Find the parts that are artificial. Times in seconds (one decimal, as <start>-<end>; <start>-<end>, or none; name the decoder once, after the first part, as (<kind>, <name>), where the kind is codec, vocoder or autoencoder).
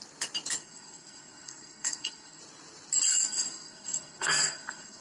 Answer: 0.6-2.4 (codec, SNAC); 3.1-5.0